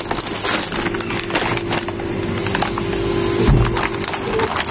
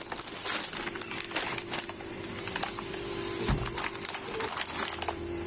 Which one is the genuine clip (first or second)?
first